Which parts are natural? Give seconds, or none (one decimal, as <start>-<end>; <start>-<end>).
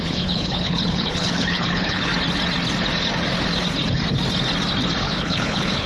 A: 2.1-5.0